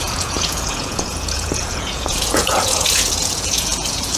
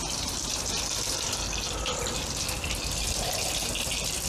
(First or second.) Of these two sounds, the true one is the second